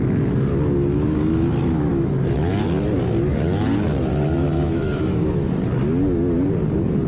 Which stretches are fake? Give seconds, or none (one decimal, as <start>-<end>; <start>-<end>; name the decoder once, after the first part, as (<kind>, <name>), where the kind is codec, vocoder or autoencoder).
1.9-2.5 (autoencoder, DAC-VAE); 4.1-5.5

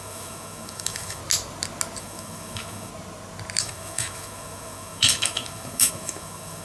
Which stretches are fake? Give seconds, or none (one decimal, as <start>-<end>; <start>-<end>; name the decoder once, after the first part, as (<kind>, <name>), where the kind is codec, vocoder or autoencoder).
0.0-1.2 (autoencoder, DAC-VAE); 2.0-2.9; 3.6-6.6

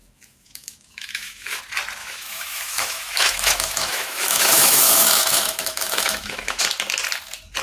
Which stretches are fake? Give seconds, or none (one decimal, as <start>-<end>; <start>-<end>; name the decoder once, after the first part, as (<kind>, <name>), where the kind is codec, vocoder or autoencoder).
0.0-1.6 (autoencoder, DAC-VAE); 2.0-6.6

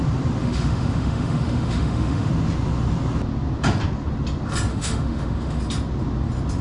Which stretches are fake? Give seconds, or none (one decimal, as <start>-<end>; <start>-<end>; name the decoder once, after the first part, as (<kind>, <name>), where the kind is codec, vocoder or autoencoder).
0.4-2.3 (autoencoder, DAC-VAE); 4.7-5.6